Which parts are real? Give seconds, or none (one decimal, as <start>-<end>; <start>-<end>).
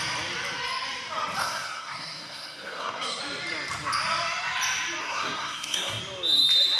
0.0-1.4; 3.2-5.0; 6.0-6.8